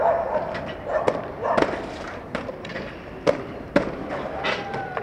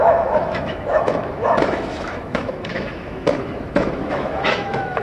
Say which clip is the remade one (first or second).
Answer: second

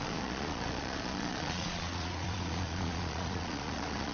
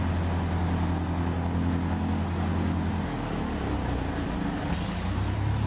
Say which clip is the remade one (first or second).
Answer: first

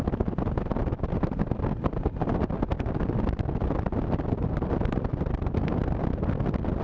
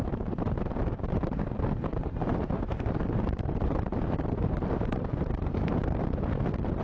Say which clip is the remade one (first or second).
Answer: second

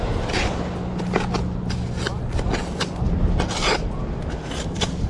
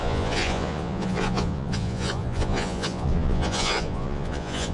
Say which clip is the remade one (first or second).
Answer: second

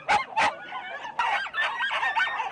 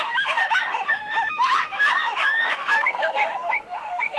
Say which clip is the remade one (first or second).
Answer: second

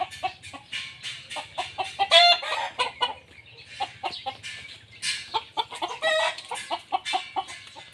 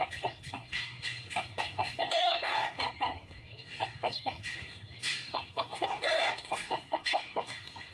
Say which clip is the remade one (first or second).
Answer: second